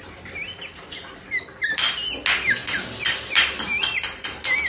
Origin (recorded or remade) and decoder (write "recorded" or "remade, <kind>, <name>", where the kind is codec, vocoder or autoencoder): recorded